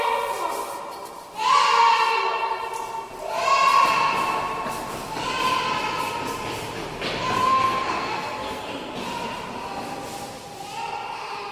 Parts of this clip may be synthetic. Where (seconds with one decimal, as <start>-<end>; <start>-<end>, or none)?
7.4-8.9